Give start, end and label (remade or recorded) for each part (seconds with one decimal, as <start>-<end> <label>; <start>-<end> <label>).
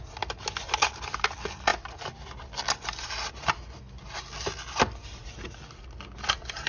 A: 0.0-6.7 recorded